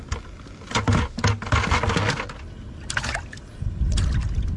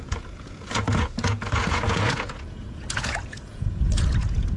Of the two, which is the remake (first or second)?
second